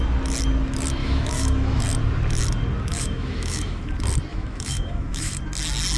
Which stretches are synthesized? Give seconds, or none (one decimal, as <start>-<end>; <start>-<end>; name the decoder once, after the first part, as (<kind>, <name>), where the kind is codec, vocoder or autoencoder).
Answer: 1.0-1.8 (autoencoder, DAC-VAE); 2.9-3.8; 4.3-5.4